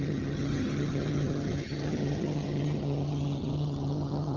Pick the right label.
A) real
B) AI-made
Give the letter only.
B